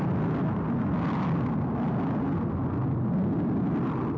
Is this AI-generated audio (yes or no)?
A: no